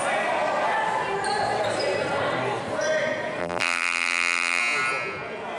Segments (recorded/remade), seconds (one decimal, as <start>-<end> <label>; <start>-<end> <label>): 0.0-3.4 recorded; 3.4-4.6 remade; 4.6-5.6 recorded